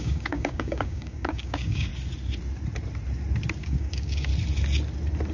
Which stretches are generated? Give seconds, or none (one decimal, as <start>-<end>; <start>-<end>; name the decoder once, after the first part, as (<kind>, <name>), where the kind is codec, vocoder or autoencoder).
0.0-1.9 (codec, DAC); 3.6-4.3